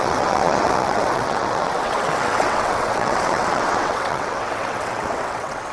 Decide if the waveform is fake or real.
fake